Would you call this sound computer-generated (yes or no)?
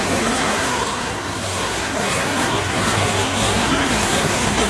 yes